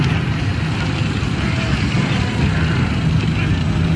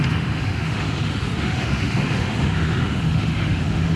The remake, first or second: second